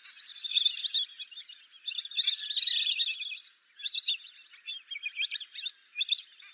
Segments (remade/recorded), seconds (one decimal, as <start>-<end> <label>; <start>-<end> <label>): 0.0-0.8 remade; 0.8-6.5 recorded